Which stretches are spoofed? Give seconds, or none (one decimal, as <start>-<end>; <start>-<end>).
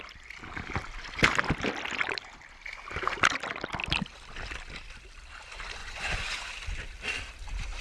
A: 5.8-6.5